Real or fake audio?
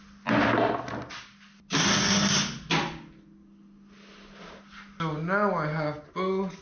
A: real